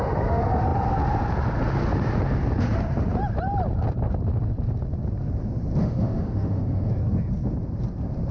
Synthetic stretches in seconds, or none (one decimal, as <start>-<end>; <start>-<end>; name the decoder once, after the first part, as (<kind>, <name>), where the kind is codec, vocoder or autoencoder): 5.8-6.9 (autoencoder, DAC-VAE)

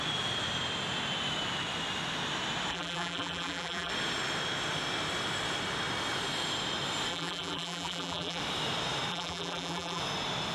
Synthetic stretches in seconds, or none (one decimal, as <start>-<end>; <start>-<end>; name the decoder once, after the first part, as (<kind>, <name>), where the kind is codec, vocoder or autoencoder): 2.7-3.9 (vocoder, BigVGAN v2); 7.1-8.4; 9.1-10.0

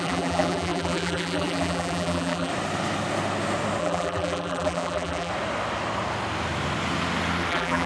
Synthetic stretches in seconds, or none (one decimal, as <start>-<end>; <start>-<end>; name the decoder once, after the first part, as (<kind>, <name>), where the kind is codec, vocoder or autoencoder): 0.0-2.5 (vocoder, BigVGAN v2); 3.8-5.3; 7.5-7.9

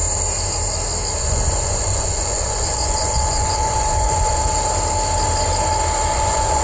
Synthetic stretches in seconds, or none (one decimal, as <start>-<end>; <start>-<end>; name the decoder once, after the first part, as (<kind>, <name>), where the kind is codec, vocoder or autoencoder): 1.2-4.4 (vocoder, Vocos); 6.1-6.6

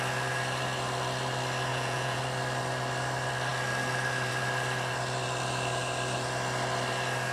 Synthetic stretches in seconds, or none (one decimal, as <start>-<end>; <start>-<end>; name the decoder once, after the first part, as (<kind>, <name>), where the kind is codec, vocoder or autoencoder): 1.7-2.2 (vocoder, Vocos)

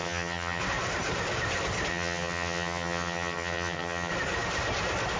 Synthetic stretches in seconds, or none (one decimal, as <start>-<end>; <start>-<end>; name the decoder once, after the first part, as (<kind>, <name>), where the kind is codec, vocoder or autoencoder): 0.0-0.6 (vocoder, HiFi-GAN); 1.9-4.1